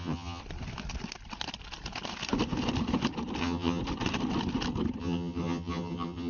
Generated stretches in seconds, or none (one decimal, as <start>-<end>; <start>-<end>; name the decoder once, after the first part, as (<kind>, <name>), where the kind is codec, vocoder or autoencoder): 0.0-0.4 (vocoder, HiFi-GAN); 3.4-3.8; 5.0-6.3